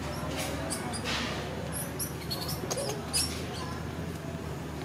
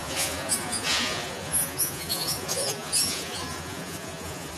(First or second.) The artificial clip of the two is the second